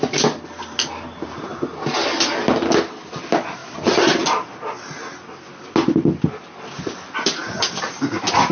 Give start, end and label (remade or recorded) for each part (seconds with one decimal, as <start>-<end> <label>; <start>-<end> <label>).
0.0-8.5 recorded